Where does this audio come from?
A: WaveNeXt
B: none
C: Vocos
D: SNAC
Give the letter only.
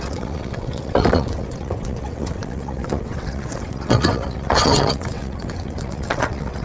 A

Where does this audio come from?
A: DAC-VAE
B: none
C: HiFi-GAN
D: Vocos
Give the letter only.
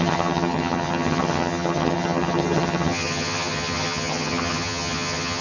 C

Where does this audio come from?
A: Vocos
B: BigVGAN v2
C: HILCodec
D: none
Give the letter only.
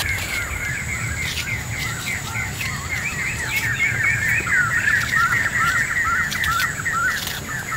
D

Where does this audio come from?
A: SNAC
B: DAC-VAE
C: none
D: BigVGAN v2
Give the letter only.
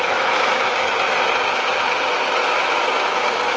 B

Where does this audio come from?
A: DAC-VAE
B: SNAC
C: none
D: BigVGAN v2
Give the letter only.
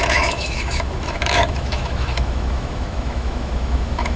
A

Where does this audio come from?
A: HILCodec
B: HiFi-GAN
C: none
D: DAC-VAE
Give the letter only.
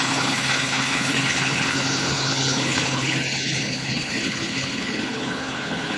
A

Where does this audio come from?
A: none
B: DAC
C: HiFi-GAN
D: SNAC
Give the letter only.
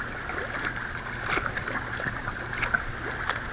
A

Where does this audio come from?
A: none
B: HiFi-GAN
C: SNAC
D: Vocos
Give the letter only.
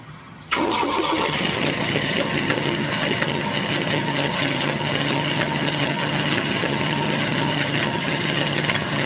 B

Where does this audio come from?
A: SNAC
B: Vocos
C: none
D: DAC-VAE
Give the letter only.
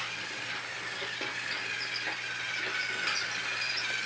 C